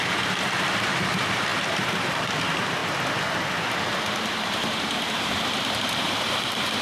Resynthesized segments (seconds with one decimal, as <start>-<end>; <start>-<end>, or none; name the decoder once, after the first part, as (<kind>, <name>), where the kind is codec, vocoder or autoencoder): 0.0-2.8 (vocoder, BigVGAN v2); 4.5-6.8